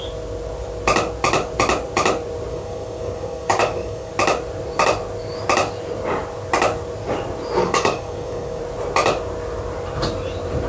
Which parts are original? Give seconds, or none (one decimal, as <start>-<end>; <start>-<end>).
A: 0.0-2.5; 4.1-7.6; 8.6-10.7